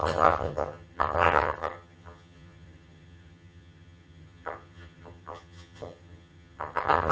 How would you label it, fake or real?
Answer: fake